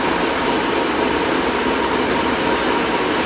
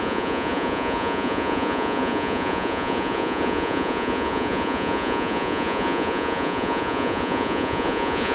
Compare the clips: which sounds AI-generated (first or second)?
second